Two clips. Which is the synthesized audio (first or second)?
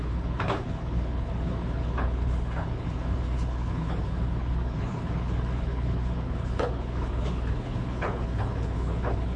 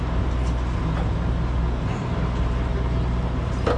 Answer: first